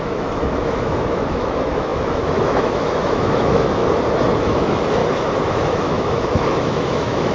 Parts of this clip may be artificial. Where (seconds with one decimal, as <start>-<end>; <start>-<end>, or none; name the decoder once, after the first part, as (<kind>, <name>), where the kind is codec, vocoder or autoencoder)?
0.0-3.8 (autoencoder, DAC-VAE); 4.4-5.0; 5.5-7.3